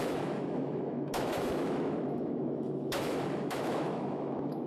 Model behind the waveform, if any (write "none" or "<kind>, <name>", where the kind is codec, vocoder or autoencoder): autoencoder, DAC-VAE